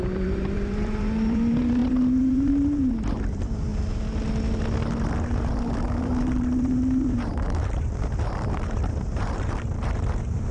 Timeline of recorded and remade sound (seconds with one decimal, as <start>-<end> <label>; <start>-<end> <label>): 0.0-3.7 remade; 3.7-5.2 recorded; 5.2-10.5 remade